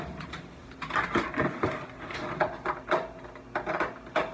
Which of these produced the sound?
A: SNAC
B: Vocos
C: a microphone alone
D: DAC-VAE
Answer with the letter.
C